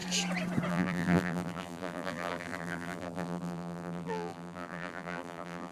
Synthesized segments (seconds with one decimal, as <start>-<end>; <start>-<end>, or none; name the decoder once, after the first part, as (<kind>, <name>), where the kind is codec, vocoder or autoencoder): 0.7-5.7 (vocoder, BigVGAN v2)